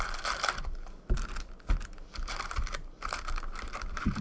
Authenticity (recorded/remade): recorded